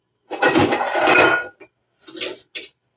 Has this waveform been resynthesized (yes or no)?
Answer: no